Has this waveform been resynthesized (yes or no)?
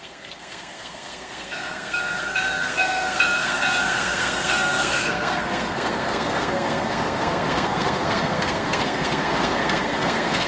yes